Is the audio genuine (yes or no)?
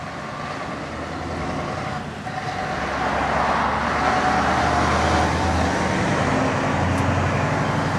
yes